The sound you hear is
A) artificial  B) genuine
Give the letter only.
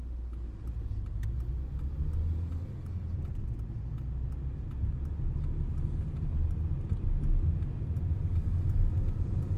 B